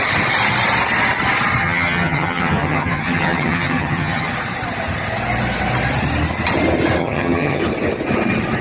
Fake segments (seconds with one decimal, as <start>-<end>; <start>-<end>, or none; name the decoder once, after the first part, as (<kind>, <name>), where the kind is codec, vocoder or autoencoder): 1.6-4.3 (vocoder, HiFi-GAN); 7.0-7.6